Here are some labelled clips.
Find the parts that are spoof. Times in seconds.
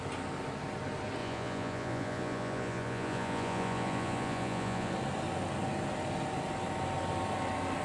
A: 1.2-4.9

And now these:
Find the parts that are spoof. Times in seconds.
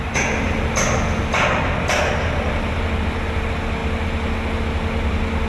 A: none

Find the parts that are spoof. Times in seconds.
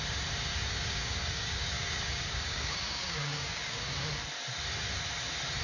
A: 0.5-3.9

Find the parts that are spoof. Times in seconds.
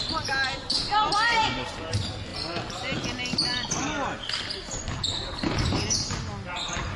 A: none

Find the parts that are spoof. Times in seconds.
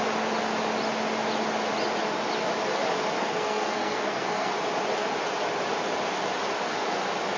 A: 3.2-4.5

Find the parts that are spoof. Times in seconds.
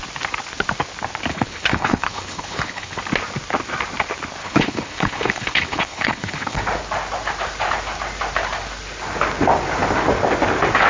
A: 1.3-3.0; 4.4-6.6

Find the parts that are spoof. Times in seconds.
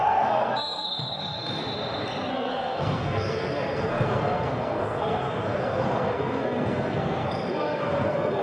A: 0.0-1.6; 2.3-8.4